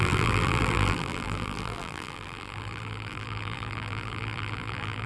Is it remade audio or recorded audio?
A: remade